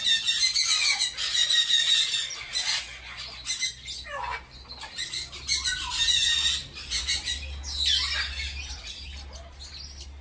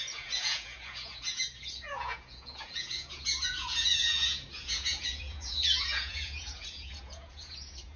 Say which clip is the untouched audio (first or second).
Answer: first